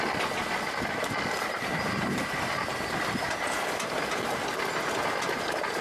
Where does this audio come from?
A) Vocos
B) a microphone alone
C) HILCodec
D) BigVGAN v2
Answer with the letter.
B